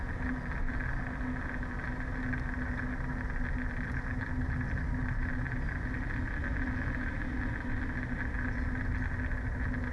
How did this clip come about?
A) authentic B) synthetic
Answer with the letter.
A